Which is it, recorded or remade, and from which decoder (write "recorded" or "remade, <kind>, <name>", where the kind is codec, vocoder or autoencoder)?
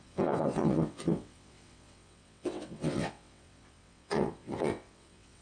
remade, vocoder, WaveNeXt